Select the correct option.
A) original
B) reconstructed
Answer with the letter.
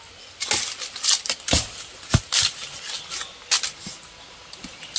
A